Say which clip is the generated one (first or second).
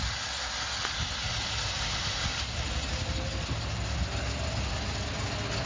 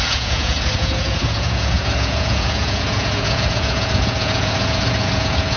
second